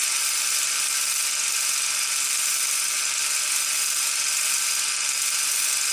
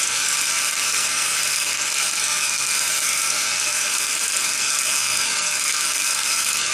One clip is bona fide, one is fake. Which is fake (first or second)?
second